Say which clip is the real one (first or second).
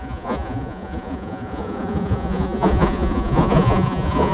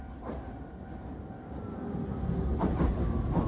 second